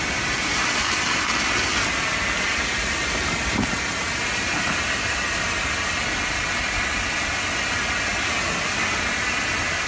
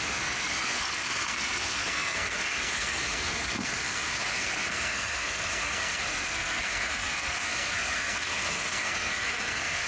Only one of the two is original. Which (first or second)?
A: first